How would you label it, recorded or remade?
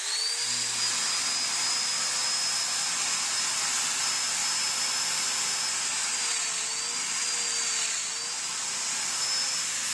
recorded